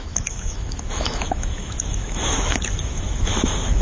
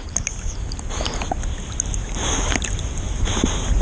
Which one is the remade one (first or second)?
first